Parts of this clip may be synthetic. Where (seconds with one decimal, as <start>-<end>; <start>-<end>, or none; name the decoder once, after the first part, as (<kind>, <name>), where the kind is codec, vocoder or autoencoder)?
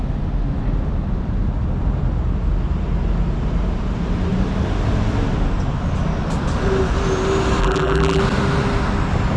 7.6-8.2 (vocoder, BigVGAN v2)